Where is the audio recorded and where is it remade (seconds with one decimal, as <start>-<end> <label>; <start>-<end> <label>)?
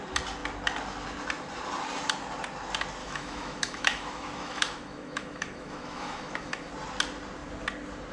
0.0-3.0 recorded; 3.0-6.7 remade; 6.7-8.1 recorded